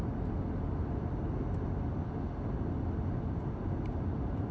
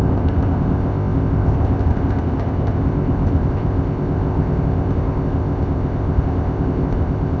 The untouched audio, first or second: first